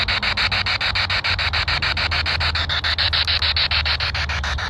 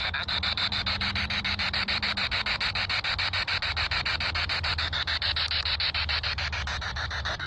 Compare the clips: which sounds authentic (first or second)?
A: first